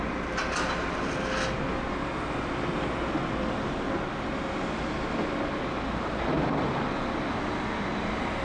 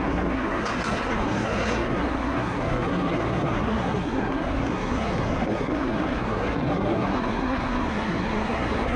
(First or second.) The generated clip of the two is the second